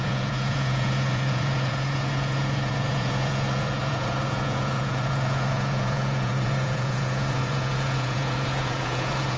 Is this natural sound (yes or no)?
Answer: no